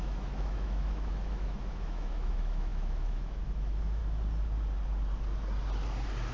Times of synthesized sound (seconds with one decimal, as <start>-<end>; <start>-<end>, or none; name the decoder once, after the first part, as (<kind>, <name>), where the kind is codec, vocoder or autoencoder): 0.0-4.0 (autoencoder, DAC-VAE)